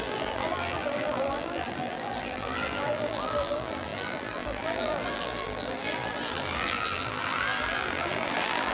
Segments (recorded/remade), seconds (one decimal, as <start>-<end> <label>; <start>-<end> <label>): 0.0-8.7 remade

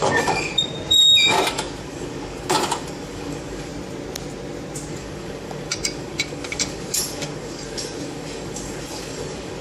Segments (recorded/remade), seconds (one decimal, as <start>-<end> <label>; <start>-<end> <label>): 0.0-0.5 remade; 0.5-1.5 recorded; 1.5-3.7 remade; 3.7-4.9 recorded; 4.9-9.6 remade